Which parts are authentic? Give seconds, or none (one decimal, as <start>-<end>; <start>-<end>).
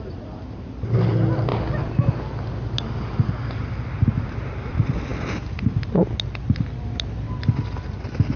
0.0-8.4